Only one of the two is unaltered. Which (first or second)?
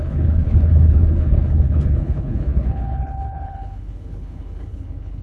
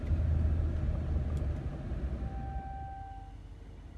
second